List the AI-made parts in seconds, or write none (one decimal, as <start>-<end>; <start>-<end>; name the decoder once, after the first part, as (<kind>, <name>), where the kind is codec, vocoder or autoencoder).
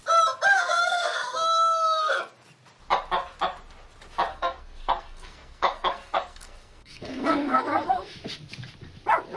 0.5-2.2 (codec, SNAC); 4.3-8.2